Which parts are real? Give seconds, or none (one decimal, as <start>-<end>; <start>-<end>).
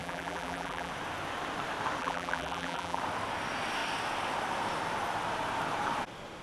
0.9-2.0; 3.0-6.4